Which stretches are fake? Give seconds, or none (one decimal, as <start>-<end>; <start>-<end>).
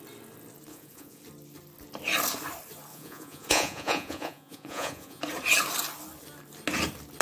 0.7-1.2; 2.9-5.2